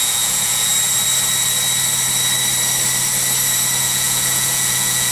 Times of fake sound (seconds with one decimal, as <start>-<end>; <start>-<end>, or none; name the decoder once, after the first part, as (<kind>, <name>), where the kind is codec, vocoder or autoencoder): 0.0-0.7 (vocoder, Vocos); 3.8-5.1